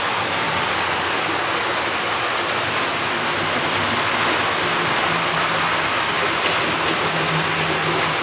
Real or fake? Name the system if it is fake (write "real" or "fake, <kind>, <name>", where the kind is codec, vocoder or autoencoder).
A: real